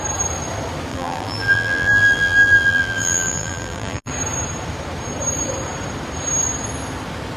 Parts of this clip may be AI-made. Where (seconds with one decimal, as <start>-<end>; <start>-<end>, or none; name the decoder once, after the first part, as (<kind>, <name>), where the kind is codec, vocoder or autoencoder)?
0.9-4.1 (vocoder, BigVGAN v2)